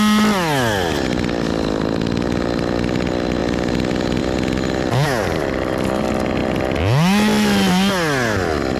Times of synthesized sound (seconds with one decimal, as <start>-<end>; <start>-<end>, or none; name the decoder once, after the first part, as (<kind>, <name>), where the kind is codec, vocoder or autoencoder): none